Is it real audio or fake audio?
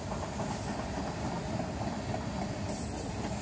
real